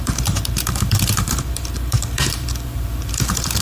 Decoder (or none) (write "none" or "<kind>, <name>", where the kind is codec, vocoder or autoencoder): vocoder, BigVGAN v2